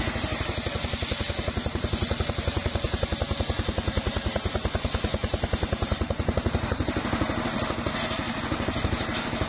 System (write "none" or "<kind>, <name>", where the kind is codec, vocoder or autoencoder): none